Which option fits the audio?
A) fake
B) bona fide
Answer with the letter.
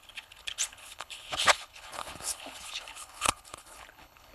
A